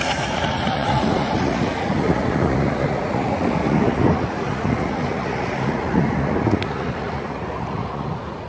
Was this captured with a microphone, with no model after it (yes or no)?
no